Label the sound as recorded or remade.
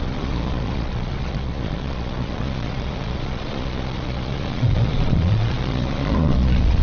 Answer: remade